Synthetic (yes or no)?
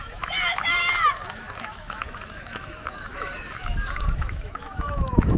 yes